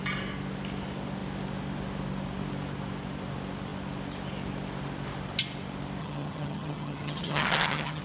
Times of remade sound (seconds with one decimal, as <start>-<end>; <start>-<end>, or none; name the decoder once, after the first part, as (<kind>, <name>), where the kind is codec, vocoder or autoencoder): 6.0-8.0 (vocoder, HiFi-GAN)